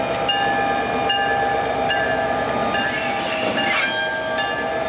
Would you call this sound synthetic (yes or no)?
no